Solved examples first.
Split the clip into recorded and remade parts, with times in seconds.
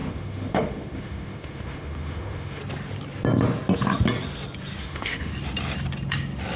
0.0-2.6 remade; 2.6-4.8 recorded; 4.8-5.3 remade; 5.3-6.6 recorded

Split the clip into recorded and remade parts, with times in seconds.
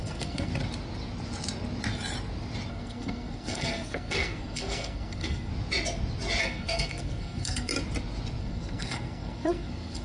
0.0-0.5 remade; 0.5-2.7 recorded; 2.7-5.5 remade; 5.5-6.4 recorded; 6.4-7.7 remade; 7.7-8.4 recorded; 8.4-10.0 remade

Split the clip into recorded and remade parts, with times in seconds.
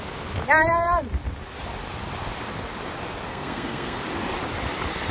0.0-3.3 recorded; 3.3-4.0 remade; 4.0-5.1 recorded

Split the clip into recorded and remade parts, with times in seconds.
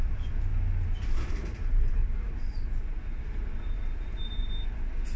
0.0-0.5 remade; 0.5-1.3 recorded; 1.3-2.0 remade; 2.0-3.2 recorded; 3.2-4.4 remade; 4.4-5.2 recorded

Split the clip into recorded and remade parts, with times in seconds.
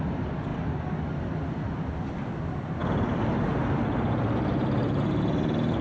0.0-5.8 recorded